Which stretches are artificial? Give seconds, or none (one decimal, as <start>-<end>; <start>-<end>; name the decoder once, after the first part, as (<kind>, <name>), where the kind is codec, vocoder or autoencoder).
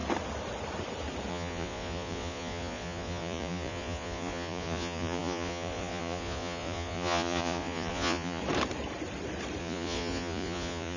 1.3-8.4 (vocoder, Vocos); 9.6-11.0